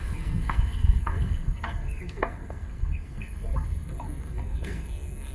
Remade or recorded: remade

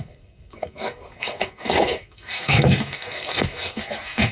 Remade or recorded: remade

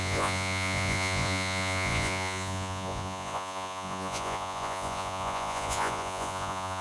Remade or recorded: remade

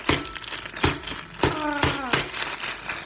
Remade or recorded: recorded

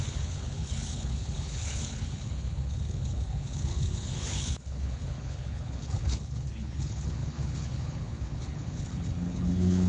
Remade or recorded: remade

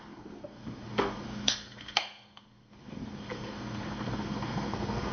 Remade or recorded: remade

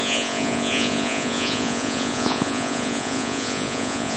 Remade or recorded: remade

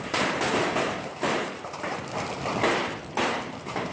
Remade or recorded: recorded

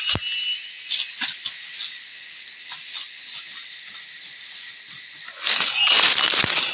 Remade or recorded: recorded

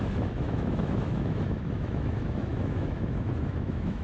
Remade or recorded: remade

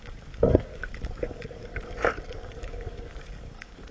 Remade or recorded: remade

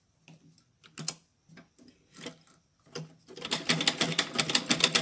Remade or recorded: recorded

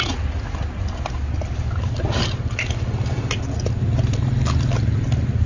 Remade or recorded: recorded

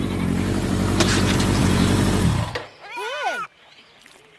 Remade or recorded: recorded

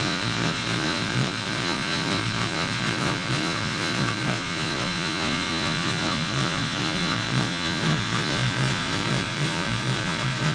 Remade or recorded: remade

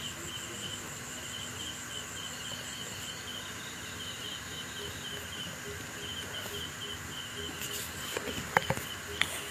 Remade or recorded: recorded